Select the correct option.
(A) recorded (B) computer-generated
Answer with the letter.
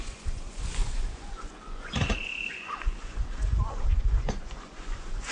B